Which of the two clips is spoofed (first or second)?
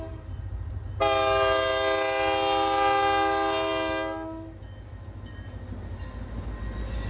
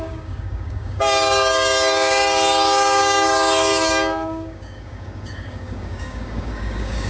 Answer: second